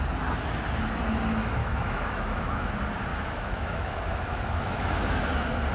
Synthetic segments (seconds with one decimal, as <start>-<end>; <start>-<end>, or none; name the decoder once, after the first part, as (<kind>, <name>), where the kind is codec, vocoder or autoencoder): 1.6-2.7 (autoencoder, DAC-VAE); 3.1-5.2